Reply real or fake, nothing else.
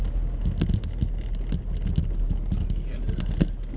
real